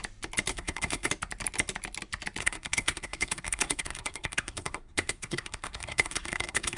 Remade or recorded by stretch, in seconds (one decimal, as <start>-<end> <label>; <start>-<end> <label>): 0.0-0.5 recorded; 0.5-1.1 remade; 1.1-2.4 recorded; 2.4-6.8 remade